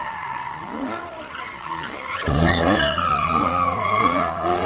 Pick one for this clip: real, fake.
fake